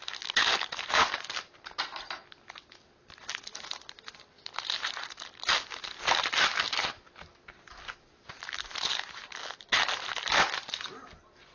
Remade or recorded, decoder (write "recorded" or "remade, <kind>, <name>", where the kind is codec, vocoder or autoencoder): recorded